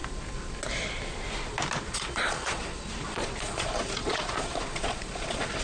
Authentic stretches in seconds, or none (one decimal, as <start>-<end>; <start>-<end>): 0.0-1.9